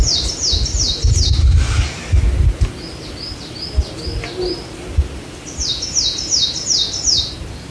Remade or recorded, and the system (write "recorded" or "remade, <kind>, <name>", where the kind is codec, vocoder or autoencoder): recorded